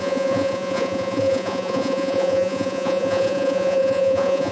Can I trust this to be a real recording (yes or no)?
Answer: no